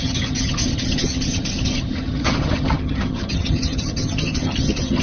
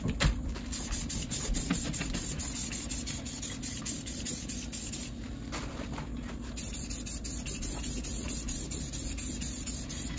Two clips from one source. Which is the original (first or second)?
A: second